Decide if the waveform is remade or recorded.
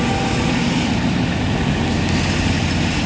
recorded